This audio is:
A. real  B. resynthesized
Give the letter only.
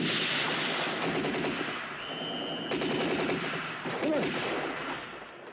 A